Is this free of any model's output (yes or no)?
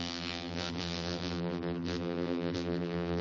no